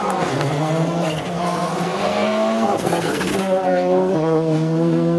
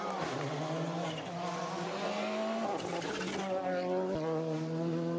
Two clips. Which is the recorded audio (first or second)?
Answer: second